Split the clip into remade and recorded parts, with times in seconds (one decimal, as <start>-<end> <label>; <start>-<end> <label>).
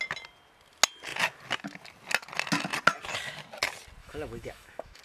0.0-4.0 recorded; 4.0-5.0 remade